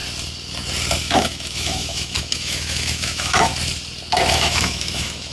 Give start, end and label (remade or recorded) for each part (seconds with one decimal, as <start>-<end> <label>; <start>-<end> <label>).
0.0-1.0 recorded; 1.0-3.5 remade; 3.5-4.3 recorded; 4.3-5.3 remade